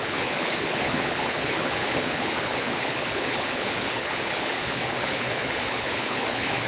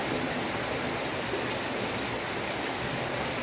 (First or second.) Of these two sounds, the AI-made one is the first